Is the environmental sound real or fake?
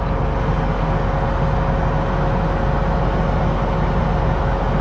real